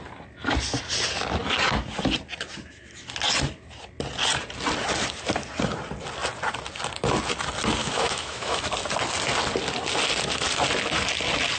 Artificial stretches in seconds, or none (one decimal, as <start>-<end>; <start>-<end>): 7.8-8.6